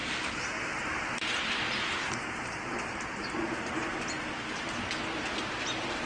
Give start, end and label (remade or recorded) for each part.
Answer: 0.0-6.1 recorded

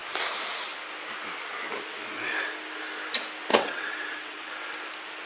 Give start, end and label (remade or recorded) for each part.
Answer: 0.0-3.5 recorded; 3.5-4.5 remade; 4.5-5.3 recorded